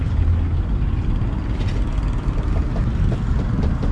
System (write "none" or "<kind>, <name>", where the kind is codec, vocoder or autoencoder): none